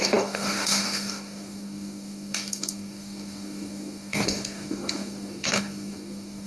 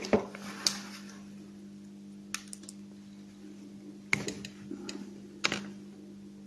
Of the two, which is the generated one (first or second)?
first